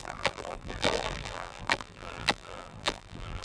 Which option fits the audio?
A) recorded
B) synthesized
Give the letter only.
B